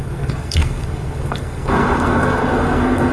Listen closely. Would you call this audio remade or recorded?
remade